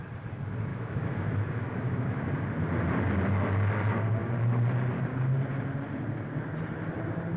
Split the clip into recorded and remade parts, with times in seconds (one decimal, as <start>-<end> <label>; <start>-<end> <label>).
0.0-0.7 recorded; 0.7-2.3 remade; 2.3-7.4 recorded